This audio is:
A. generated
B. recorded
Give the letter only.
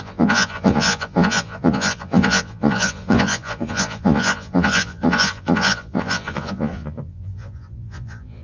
A